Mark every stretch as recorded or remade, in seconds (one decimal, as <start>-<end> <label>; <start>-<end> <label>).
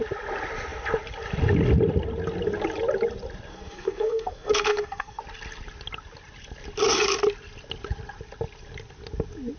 0.0-3.5 recorded; 3.5-5.2 remade; 5.2-9.6 recorded